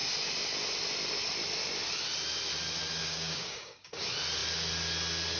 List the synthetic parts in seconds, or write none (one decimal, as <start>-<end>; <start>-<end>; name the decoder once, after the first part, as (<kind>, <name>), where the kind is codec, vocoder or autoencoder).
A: 3.0-3.9 (codec, DAC)